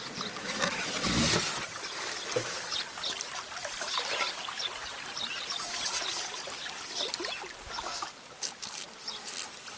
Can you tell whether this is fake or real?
real